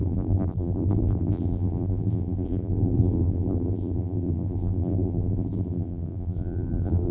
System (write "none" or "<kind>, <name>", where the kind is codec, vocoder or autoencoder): vocoder, BigVGAN v2